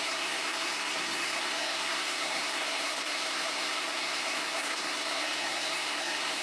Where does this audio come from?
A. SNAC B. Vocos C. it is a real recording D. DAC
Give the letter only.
A